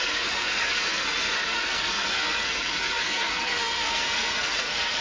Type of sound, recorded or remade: remade